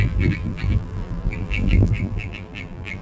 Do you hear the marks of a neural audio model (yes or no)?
yes